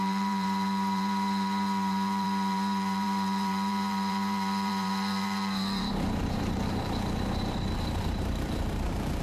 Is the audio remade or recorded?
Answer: remade